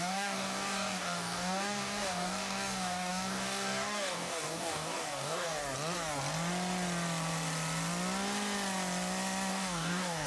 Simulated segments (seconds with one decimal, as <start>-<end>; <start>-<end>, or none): 0.0-5.6; 9.5-10.3